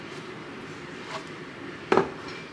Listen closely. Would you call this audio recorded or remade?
remade